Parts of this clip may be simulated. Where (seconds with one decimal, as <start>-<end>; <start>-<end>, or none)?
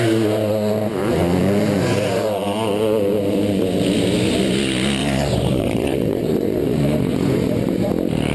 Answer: 1.0-3.6; 5.0-7.9